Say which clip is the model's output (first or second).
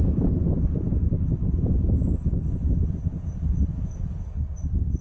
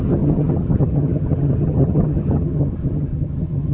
second